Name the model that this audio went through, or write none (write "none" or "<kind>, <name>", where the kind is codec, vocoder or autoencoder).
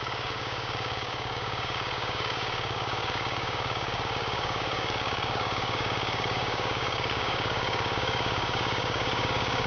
codec, DAC